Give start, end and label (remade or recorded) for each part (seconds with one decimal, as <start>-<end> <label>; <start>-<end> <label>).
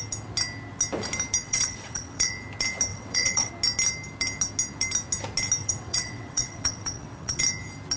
0.0-1.4 recorded; 1.4-2.3 remade; 2.3-2.9 recorded; 2.9-3.5 remade; 3.5-5.6 recorded; 5.6-7.4 remade; 7.4-8.0 recorded